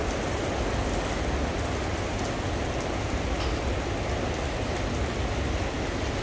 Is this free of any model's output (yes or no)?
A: yes